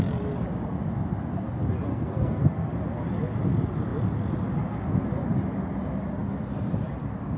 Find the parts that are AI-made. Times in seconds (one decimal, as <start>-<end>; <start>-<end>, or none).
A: 1.9-2.7